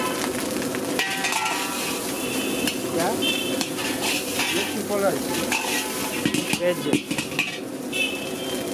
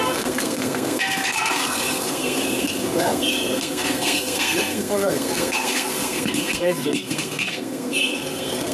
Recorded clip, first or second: first